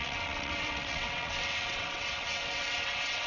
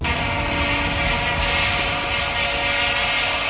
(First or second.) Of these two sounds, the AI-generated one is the first